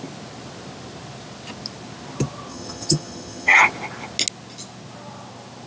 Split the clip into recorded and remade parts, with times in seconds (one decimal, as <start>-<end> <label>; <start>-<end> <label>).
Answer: 0.0-2.5 recorded; 2.5-3.6 remade; 3.6-5.7 recorded